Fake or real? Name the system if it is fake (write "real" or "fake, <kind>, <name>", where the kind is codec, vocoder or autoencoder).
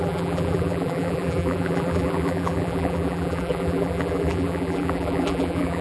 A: fake, vocoder, BigVGAN v2